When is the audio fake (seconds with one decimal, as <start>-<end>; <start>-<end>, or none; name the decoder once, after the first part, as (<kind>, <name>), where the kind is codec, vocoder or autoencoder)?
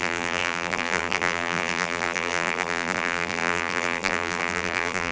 0.0-5.1 (vocoder, BigVGAN v2)